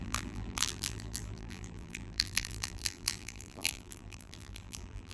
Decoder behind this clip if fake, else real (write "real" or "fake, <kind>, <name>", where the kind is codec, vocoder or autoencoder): fake, vocoder, BigVGAN v2